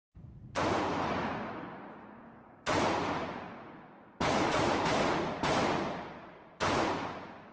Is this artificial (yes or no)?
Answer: yes